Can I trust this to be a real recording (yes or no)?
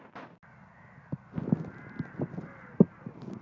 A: yes